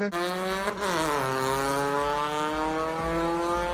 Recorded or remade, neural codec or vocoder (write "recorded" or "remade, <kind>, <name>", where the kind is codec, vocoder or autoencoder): recorded